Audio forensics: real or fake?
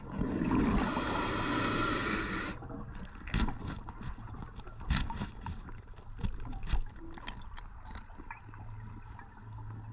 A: real